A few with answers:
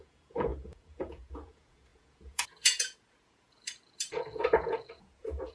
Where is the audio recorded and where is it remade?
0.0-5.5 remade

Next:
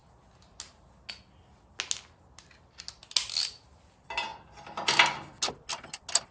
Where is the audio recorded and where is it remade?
0.0-6.3 recorded

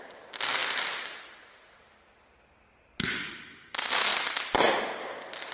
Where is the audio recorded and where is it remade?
0.0-5.5 recorded

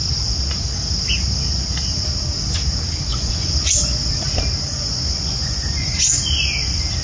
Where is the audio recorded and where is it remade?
0.0-3.1 recorded; 3.1-4.1 remade; 4.1-4.7 recorded; 4.7-5.9 remade; 5.9-7.0 recorded

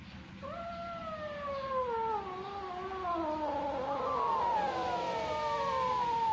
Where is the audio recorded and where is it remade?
0.0-6.3 recorded